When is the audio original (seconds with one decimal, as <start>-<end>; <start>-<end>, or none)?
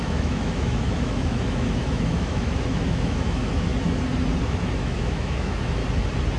3.7-4.4; 5.8-6.4